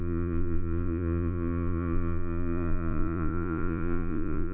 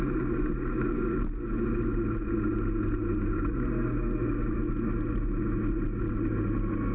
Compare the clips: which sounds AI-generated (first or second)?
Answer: first